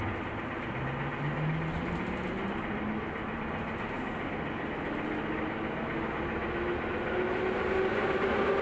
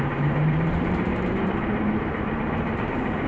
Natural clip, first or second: first